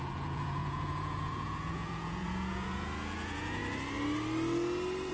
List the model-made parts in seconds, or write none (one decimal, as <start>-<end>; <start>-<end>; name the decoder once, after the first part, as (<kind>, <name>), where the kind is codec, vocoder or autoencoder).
0.0-3.6 (vocoder, Vocos)